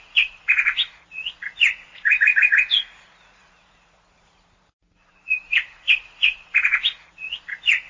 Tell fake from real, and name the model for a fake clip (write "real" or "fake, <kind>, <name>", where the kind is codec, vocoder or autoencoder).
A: fake, vocoder, Vocos